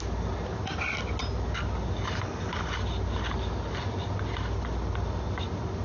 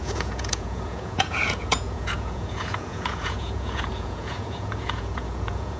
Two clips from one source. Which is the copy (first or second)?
second